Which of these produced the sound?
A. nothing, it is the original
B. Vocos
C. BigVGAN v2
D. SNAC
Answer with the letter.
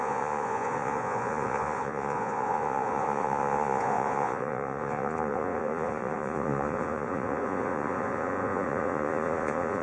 B